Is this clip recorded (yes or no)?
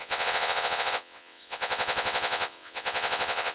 no